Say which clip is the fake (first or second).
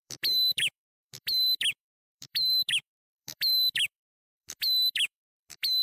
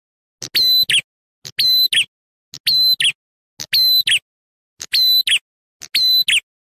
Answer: first